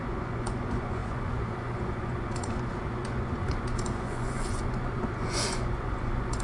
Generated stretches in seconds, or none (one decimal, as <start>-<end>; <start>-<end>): 0.0-6.4